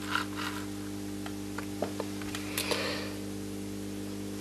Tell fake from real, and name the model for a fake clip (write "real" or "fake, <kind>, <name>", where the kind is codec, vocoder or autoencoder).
real